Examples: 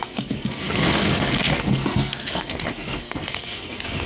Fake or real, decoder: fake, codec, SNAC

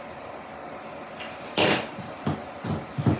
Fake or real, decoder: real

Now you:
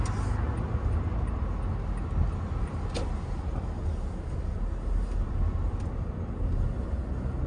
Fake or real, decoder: real